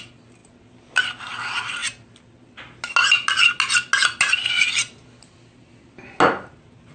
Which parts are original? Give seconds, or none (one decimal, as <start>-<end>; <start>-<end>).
0.0-6.9